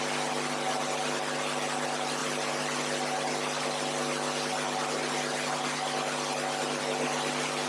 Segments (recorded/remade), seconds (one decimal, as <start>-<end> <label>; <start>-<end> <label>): 0.0-7.7 recorded